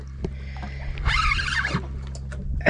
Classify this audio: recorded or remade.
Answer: recorded